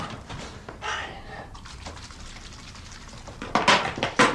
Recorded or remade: recorded